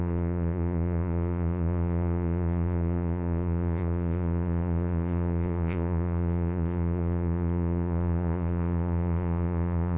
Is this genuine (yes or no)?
no